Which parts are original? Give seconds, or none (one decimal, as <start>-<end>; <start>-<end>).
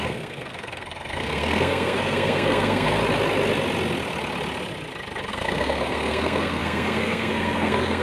3.0-5.3